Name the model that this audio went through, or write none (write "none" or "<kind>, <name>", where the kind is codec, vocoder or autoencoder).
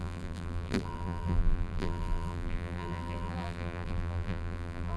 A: vocoder, BigVGAN v2